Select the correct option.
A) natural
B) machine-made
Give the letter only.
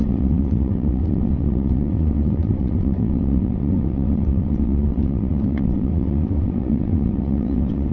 B